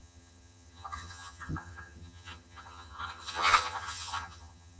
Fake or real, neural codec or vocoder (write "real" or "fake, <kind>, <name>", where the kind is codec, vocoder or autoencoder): fake, vocoder, HiFi-GAN